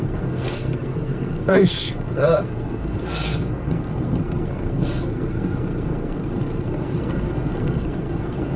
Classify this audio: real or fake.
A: fake